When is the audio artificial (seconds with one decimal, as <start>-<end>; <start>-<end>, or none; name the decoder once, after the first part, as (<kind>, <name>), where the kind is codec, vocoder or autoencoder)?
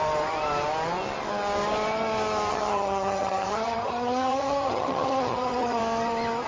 2.5-5.8 (vocoder, HiFi-GAN)